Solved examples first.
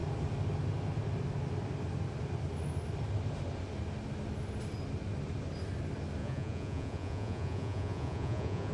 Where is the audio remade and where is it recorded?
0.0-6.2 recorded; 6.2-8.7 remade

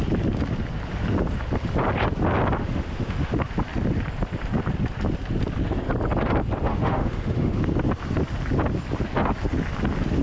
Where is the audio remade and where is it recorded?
0.0-2.6 recorded; 2.6-3.3 remade; 3.3-6.7 recorded; 6.7-7.6 remade; 7.6-10.2 recorded

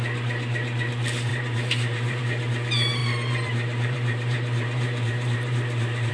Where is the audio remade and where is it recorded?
0.0-1.3 recorded; 1.3-2.2 remade; 2.2-3.0 recorded; 3.0-6.1 remade

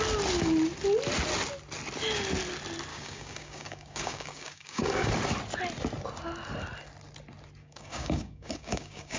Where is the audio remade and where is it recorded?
0.0-2.9 recorded; 2.9-5.1 remade; 5.1-7.6 recorded; 7.6-9.2 remade